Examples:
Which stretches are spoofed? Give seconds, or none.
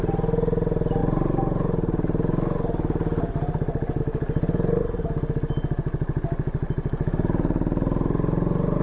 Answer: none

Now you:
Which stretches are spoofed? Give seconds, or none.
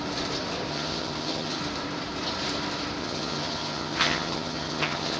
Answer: 0.7-1.6 (vocoder, HiFi-GAN); 3.0-5.2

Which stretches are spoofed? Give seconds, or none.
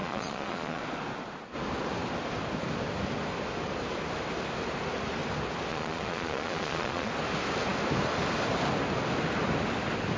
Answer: 0.0-0.8 (vocoder, Vocos); 5.7-7.1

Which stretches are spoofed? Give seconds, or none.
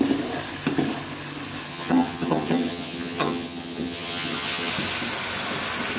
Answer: 1.7-4.7 (vocoder, HiFi-GAN)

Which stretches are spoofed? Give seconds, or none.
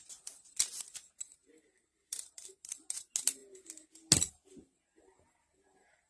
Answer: 1.4-2.5 (vocoder, BigVGAN v2)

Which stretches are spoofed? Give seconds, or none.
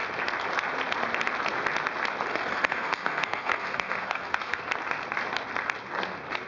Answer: 2.3-4.6 (codec, SNAC)